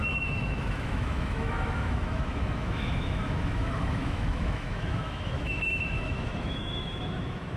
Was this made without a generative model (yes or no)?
no